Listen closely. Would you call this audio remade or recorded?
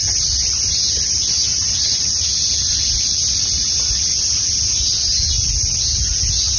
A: recorded